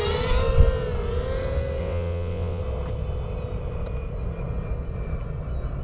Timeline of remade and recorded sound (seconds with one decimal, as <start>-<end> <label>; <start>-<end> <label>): 0.0-1.8 recorded; 1.8-2.6 remade; 2.6-5.8 recorded